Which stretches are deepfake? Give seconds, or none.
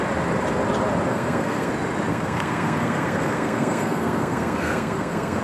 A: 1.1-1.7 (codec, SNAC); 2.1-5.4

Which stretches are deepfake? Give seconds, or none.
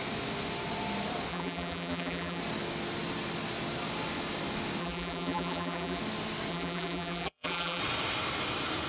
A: 1.3-2.4 (vocoder, BigVGAN v2); 4.8-6.0; 6.5-7.8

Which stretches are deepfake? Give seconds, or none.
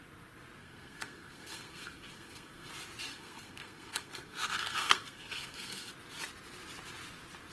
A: 0.6-2.7 (codec, SNAC); 3.1-5.9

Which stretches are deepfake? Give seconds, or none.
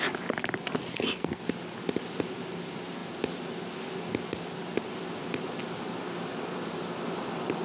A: 0.9-1.4 (codec, SNAC)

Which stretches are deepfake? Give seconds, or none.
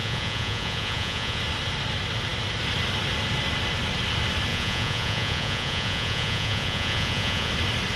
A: 0.0-1.4 (vocoder, Vocos); 4.5-7.5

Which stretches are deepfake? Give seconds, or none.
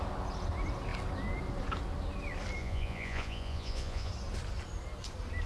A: 2.6-4.1 (vocoder, Vocos)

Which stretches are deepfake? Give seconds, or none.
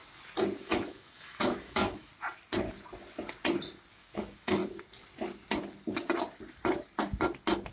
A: 0.6-2.1 (autoencoder, DAC-VAE); 3.9-4.6